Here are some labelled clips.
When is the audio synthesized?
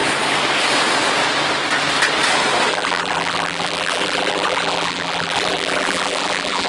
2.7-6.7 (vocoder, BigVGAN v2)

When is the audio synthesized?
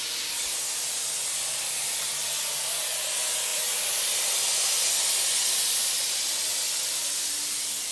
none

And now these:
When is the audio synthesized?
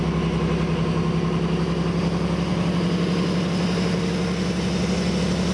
none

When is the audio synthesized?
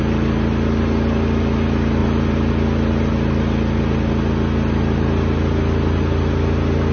2.0-2.5 (vocoder, BigVGAN v2)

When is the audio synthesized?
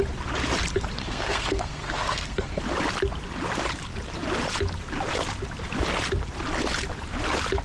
1.0-2.6 (codec, SNAC)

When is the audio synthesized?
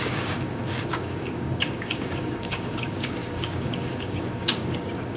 0.0-5.2 (codec, DAC)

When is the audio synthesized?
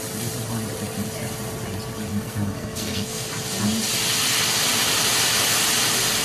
2.1-3.3 (codec, SNAC)